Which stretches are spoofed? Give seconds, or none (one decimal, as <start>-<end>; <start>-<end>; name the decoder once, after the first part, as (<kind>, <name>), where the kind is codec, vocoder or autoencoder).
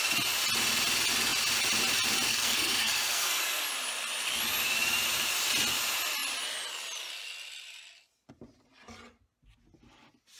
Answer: 2.3-3.6 (codec, SNAC)